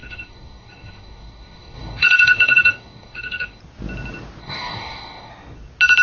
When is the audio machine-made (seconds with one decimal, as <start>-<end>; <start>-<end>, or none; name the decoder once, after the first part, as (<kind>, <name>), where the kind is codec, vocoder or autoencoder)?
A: 0.0-3.6 (codec, DAC); 4.4-5.3